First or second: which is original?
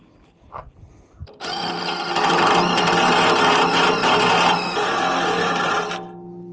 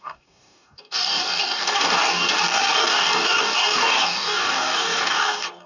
first